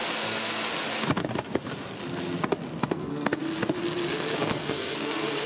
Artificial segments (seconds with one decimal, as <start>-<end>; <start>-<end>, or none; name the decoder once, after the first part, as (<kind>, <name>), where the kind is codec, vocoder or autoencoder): 0.0-0.7 (codec, SNAC); 2.8-3.4; 4.4-5.5